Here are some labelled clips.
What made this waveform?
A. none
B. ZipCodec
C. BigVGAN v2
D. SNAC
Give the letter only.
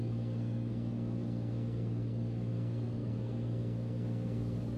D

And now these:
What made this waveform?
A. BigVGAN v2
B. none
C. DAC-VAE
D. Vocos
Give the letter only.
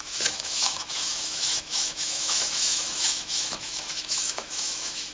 C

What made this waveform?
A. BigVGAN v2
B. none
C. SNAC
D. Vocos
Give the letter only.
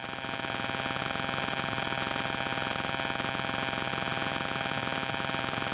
B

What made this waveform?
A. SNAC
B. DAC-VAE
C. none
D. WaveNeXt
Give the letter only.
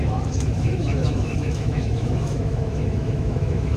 B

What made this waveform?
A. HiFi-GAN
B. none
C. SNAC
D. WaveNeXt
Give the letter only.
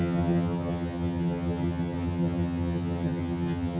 A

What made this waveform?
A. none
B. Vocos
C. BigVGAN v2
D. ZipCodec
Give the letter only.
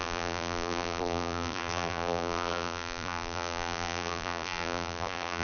C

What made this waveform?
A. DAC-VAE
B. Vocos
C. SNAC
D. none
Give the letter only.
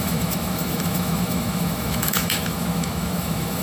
A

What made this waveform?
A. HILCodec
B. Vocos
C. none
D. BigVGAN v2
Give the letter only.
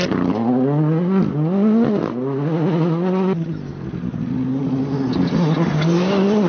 C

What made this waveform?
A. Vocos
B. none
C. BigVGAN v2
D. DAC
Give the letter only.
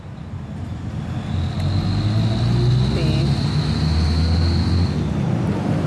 B